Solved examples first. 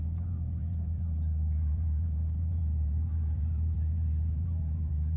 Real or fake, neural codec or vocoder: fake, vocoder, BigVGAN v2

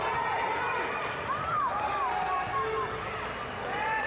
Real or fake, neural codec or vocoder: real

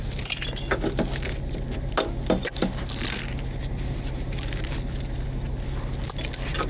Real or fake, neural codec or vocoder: real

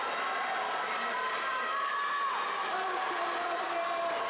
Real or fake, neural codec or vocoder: real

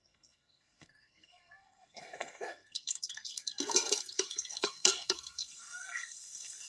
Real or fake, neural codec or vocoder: fake, codec, SNAC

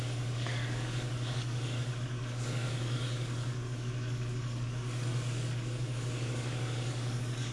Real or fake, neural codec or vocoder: fake, codec, DAC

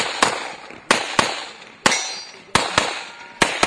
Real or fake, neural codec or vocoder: real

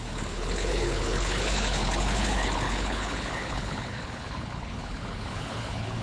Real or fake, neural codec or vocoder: fake, codec, HILCodec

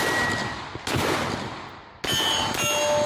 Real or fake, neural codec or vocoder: real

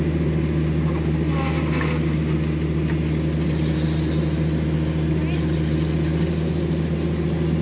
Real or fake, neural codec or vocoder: real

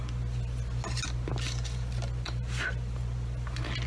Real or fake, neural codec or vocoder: real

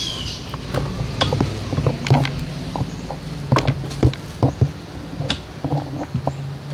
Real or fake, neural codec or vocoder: real